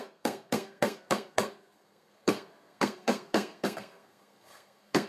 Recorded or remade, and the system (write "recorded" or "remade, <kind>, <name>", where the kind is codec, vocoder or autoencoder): remade, codec, SNAC